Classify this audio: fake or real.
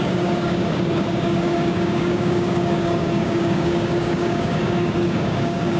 fake